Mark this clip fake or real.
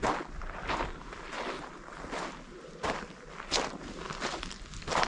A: real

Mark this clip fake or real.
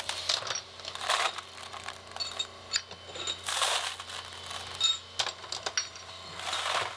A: real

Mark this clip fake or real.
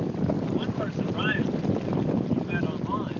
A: real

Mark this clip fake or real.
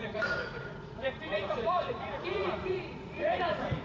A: fake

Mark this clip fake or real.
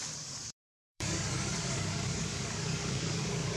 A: fake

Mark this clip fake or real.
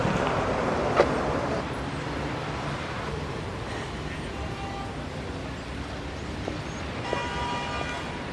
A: fake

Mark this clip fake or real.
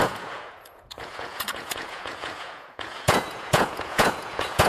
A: fake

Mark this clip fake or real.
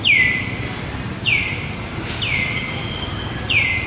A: real